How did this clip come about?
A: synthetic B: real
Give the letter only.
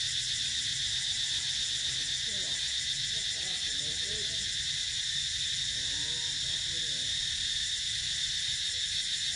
B